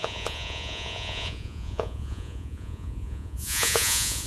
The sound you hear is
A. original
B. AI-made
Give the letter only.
B